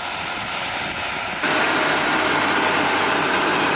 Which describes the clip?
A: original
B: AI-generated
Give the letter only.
A